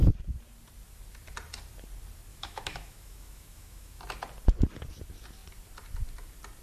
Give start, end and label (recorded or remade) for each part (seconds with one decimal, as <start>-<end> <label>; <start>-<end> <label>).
0.0-2.3 recorded; 2.3-4.0 remade; 4.0-6.6 recorded